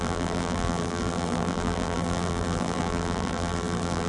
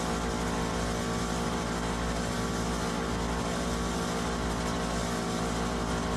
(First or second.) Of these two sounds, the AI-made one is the first